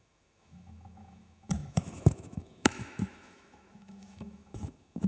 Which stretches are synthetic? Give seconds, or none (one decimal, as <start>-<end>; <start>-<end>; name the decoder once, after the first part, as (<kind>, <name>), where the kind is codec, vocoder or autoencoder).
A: 0.0-5.1 (autoencoder, DAC-VAE)